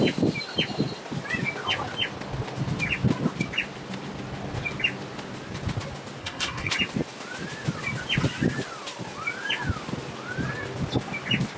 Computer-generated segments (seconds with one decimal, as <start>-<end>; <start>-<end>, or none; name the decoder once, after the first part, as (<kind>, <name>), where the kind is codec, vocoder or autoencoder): 6.2-6.7 (codec, SNAC)